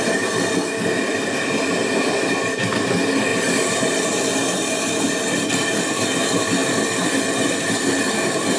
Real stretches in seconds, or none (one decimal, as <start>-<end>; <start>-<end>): 0.0-8.6